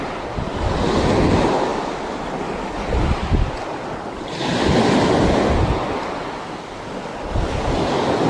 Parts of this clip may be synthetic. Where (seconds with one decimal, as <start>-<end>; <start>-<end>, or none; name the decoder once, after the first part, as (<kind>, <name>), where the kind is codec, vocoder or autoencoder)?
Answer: none